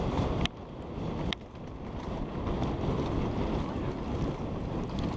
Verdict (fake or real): real